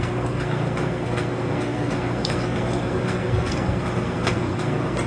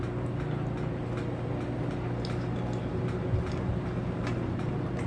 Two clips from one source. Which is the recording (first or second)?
second